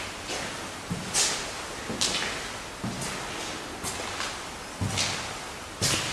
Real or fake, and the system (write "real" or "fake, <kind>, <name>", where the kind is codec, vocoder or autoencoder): real